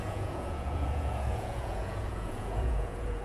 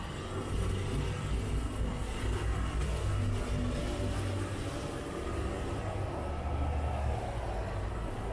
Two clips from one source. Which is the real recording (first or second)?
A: second